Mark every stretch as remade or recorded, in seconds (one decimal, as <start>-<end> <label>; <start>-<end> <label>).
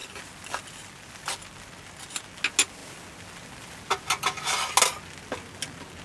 0.0-6.0 recorded